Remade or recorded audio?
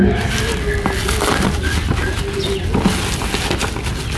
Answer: recorded